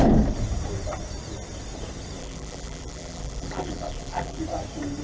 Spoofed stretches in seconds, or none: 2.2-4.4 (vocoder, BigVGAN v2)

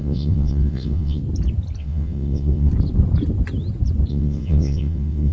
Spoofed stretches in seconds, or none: 0.0-1.2 (vocoder, WaveNeXt); 1.8-2.7; 4.1-5.3

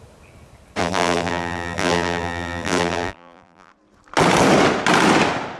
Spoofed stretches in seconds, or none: 0.8-3.7 (vocoder, BigVGAN v2)

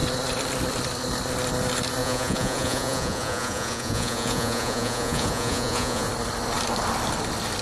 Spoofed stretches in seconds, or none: 2.0-6.1 (vocoder, Vocos)

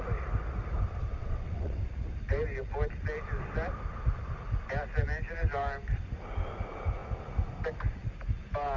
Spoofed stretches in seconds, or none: 1.2-1.8 (vocoder, WaveNeXt)

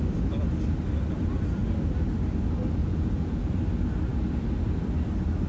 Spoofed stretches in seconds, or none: 2.8-3.5 (vocoder, Vocos)

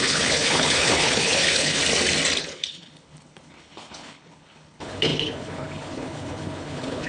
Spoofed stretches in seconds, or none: 0.0-1.8 (codec, HILCodec); 2.4-7.1